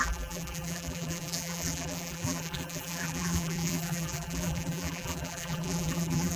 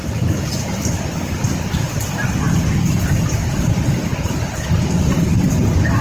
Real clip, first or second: second